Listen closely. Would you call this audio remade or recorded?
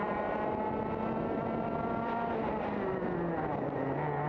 recorded